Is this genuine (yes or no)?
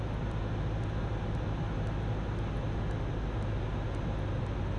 yes